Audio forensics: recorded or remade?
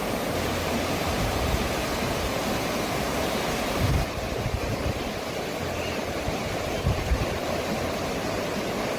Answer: remade